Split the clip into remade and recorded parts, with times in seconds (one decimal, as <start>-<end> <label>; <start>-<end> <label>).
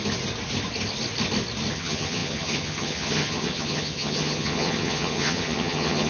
0.0-1.7 recorded; 1.7-6.1 remade